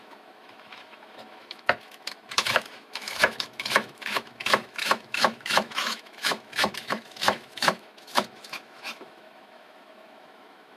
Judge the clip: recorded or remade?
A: remade